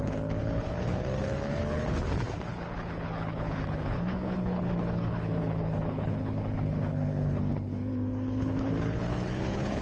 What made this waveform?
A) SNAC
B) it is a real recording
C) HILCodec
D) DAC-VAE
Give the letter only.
C